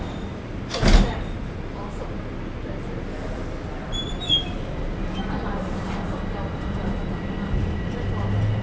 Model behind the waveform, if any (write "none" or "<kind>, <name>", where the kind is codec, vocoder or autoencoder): none